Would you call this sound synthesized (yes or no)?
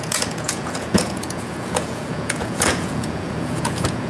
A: yes